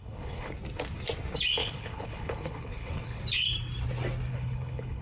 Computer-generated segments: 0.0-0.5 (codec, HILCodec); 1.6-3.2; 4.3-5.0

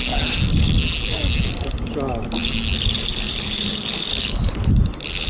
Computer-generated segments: 4.1-4.7 (codec, HILCodec)

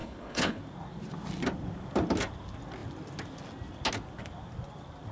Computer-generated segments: 0.0-0.6 (codec, HILCodec)

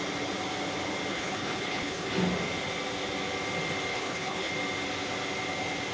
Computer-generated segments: 1.1-2.1 (codec, HILCodec); 3.9-4.5

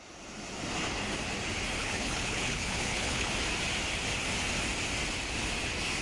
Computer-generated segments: 1.8-3.3 (codec, HILCodec)